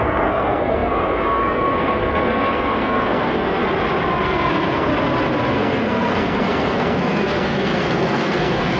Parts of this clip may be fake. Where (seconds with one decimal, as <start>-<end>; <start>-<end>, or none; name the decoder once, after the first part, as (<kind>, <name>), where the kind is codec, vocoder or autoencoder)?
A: 0.0-3.6 (codec, SNAC); 4.2-4.9; 5.5-8.8